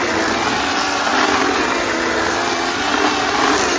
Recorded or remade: recorded